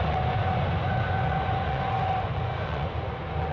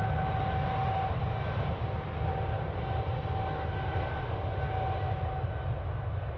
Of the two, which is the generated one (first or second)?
first